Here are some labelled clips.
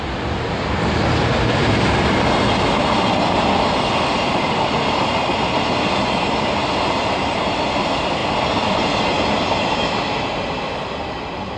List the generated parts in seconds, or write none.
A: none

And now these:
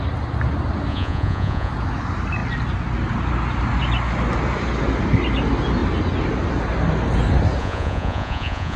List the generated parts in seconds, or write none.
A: 0.9-1.7 (vocoder, Vocos); 7.6-8.8

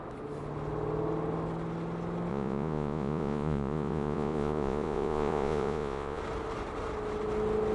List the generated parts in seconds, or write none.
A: 2.3-6.2 (vocoder, Vocos)

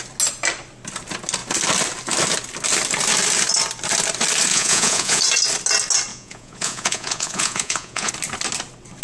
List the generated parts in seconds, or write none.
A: 4.5-5.2 (vocoder, Vocos); 6.1-8.1

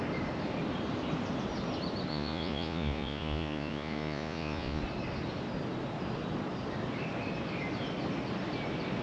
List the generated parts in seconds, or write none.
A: 2.1-4.8 (vocoder, Vocos)

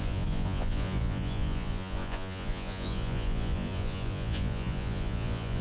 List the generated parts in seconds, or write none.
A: 0.0-5.6 (vocoder, Vocos)

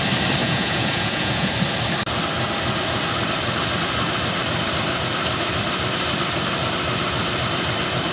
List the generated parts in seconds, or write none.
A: 0.4-1.5 (vocoder, Vocos)

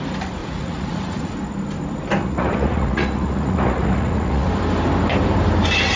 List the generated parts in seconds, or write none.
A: 0.4-1.3 (vocoder, Vocos); 2.2-4.5